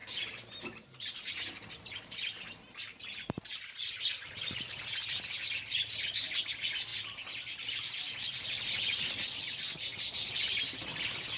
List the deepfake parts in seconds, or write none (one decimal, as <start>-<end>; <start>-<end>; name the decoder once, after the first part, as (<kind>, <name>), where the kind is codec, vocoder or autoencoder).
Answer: 0.0-4.8 (vocoder, BigVGAN v2); 9.9-10.5